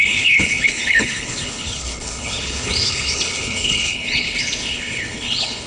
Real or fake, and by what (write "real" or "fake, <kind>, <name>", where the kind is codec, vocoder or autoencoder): fake, codec, HILCodec